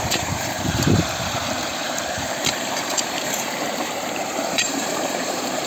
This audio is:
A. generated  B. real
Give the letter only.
A